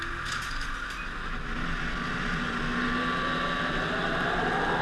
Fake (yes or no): no